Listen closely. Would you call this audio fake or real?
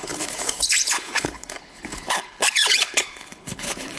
fake